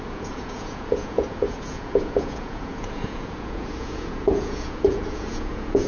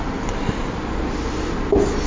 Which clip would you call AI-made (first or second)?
first